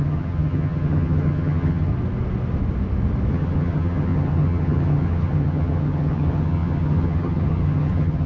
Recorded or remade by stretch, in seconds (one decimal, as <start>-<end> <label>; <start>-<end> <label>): 0.0-1.9 remade; 1.9-3.3 recorded; 3.3-8.3 remade